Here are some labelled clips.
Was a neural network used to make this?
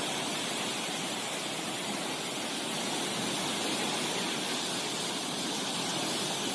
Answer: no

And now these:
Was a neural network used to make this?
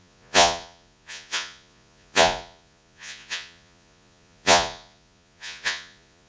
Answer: yes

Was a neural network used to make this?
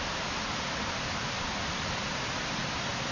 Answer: no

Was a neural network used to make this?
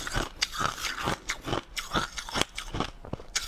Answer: no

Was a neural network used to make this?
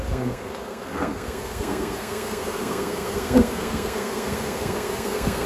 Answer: yes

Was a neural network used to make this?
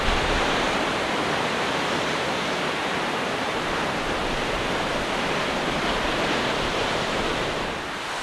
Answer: yes